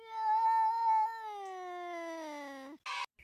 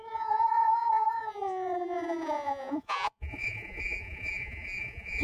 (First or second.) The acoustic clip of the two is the first